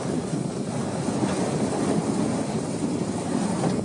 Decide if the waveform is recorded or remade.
recorded